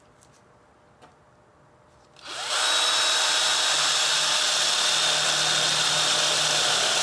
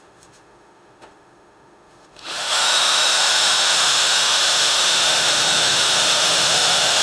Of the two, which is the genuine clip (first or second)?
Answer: first